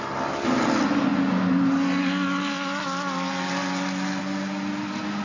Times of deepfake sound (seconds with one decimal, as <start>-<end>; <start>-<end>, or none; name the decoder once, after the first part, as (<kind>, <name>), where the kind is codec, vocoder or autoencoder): none